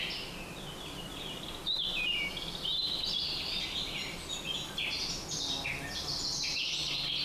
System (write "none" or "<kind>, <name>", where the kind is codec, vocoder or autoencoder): none